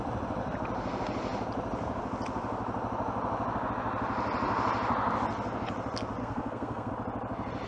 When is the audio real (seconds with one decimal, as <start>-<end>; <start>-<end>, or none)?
0.0-6.2; 6.9-7.7